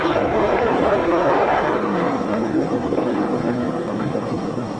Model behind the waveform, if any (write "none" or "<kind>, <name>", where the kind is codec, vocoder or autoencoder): codec, SNAC